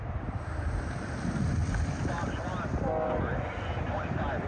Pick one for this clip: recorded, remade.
recorded